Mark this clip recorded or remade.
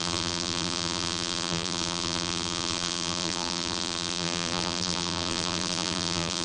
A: remade